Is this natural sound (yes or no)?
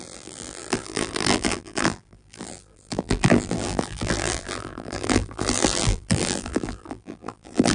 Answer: no